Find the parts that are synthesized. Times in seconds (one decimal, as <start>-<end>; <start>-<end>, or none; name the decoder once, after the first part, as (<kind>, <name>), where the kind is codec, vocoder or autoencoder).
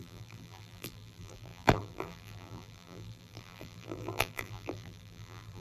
0.0-5.6 (vocoder, BigVGAN v2)